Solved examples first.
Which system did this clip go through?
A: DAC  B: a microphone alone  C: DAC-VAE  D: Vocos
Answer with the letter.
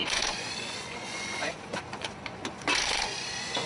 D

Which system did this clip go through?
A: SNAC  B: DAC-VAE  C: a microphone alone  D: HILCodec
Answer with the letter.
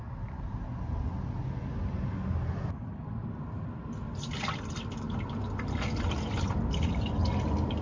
C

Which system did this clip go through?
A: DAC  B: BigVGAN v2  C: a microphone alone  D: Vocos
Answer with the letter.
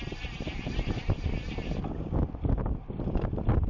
C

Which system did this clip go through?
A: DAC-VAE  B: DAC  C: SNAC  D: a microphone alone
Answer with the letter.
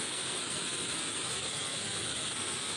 C